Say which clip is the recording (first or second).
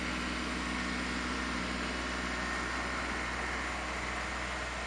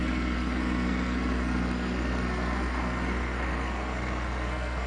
first